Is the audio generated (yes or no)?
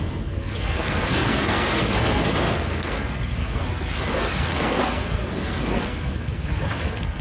yes